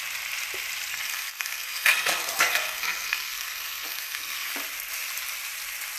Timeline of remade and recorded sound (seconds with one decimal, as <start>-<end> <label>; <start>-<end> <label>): 0.0-0.9 recorded; 0.9-4.5 remade; 4.5-6.0 recorded